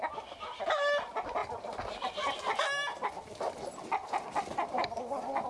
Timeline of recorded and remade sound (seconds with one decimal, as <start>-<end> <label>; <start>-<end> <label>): 0.0-5.5 recorded